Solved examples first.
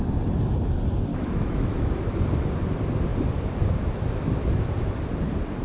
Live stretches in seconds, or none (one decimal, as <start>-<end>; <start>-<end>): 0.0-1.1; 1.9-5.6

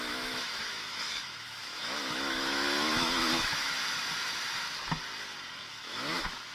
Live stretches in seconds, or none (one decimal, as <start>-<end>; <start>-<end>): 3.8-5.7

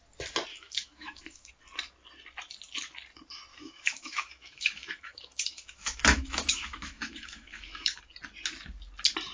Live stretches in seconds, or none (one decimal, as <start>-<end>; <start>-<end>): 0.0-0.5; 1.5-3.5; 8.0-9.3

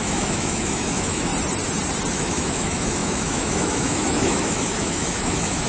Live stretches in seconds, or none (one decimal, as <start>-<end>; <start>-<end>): 1.3-2.1

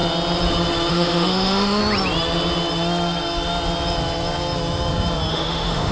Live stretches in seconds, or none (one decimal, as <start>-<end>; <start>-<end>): 0.0-0.9; 1.8-5.3

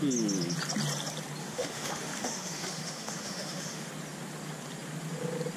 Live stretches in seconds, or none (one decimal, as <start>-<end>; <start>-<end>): 0.0-1.4; 3.9-5.6

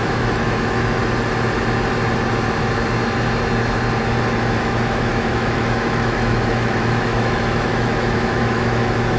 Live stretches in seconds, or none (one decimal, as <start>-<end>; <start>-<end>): 1.0-4.6

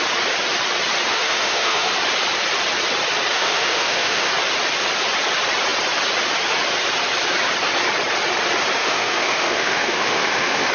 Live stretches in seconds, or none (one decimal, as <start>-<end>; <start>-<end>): 0.0-1.1; 1.9-3.3; 4.3-8.8